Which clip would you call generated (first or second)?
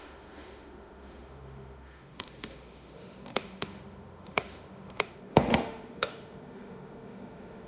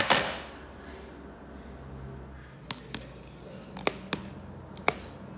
first